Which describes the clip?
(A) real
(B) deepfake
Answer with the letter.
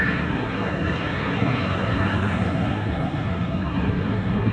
B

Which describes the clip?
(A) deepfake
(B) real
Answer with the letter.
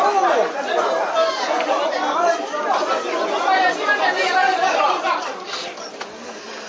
B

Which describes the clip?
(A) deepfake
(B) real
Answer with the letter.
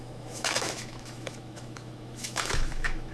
A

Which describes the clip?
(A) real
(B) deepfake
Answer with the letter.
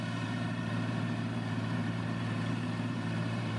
B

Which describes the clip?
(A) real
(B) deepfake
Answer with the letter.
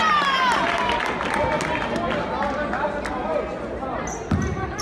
A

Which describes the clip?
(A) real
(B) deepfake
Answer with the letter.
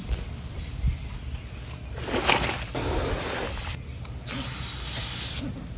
A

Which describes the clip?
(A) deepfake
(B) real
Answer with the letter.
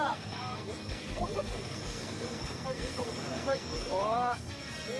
A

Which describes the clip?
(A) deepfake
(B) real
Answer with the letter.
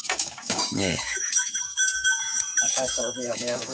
A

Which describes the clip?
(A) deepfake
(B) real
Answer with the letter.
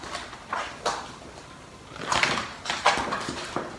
B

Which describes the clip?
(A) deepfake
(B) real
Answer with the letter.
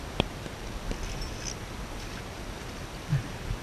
B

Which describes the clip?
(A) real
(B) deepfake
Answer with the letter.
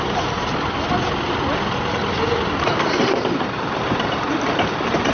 A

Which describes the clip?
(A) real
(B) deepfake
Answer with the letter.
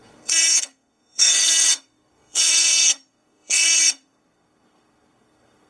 B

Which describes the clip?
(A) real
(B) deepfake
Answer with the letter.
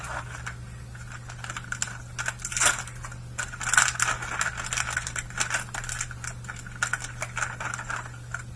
A